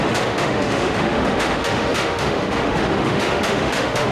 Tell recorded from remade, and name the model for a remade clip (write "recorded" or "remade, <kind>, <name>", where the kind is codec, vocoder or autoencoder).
remade, autoencoder, DAC-VAE